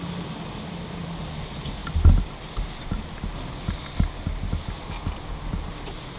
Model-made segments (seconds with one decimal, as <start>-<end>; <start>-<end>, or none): none